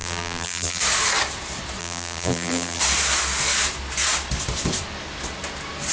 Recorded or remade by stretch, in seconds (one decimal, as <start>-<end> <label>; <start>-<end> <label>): 0.0-0.8 remade; 0.8-1.8 recorded; 1.8-2.8 remade; 2.8-5.9 recorded